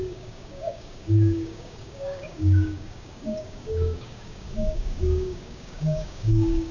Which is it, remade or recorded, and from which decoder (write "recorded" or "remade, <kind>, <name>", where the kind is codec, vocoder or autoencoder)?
remade, codec, DAC